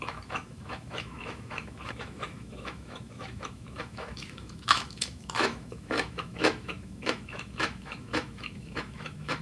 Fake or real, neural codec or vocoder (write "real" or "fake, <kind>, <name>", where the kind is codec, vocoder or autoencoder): fake, autoencoder, DAC-VAE